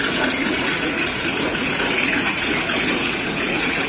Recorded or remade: remade